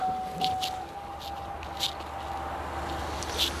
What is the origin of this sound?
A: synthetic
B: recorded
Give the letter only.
B